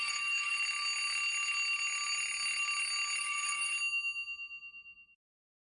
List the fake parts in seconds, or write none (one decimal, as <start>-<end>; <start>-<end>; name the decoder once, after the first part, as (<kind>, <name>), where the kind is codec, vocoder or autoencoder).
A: 0.0-0.5 (codec, DAC); 3.2-3.7; 5.2-5.8